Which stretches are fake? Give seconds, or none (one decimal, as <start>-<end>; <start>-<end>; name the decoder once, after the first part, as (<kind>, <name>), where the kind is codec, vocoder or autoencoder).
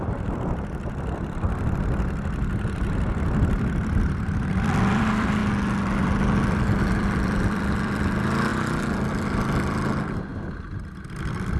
0.0-5.4 (vocoder, BigVGAN v2); 6.0-10.3; 10.9-11.6